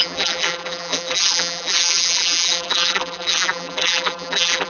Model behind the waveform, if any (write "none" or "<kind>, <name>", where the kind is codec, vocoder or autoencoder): vocoder, BigVGAN v2